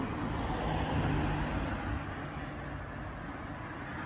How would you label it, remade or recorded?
recorded